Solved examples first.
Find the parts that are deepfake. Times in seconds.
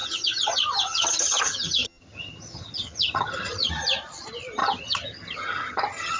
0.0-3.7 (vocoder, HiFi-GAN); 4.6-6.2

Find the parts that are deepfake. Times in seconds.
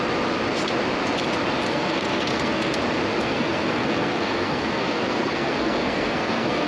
1.7-2.8 (codec, SNAC); 3.2-6.7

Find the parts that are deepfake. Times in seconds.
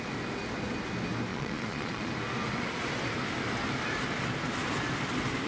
1.3-2.1 (vocoder, Vocos)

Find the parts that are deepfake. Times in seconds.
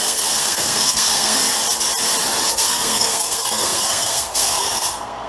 0.0-1.4 (codec, SNAC); 2.5-5.3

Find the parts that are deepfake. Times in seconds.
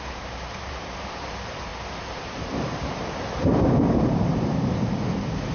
0.0-5.5 (vocoder, BigVGAN v2)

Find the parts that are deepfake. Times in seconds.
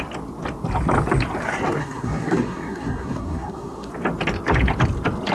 1.8-3.9 (codec, SNAC)